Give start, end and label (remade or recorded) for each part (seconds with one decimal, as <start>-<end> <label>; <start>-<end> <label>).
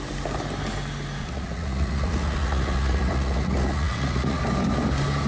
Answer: 0.0-1.2 recorded; 1.2-4.4 remade; 4.4-5.3 recorded